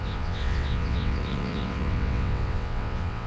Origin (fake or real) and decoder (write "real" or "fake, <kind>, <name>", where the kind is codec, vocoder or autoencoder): fake, vocoder, WaveNeXt